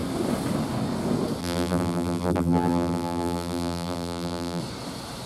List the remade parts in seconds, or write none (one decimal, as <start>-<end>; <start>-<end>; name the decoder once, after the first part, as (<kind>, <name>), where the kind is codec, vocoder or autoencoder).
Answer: 1.4-4.6 (vocoder, BigVGAN v2)